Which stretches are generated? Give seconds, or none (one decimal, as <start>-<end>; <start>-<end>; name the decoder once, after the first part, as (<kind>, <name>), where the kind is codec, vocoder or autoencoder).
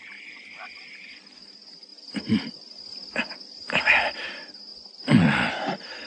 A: none